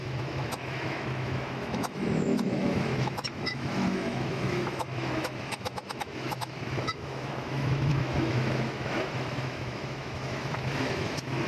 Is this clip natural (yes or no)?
no